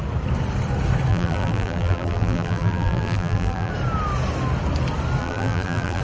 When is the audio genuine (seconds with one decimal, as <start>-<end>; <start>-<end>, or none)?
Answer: 0.0-1.1; 3.7-5.2

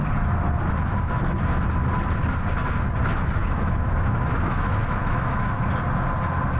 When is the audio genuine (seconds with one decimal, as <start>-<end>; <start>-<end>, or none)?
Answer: 0.0-3.4; 5.6-6.6